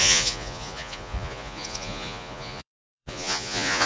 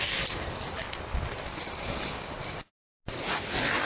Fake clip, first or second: first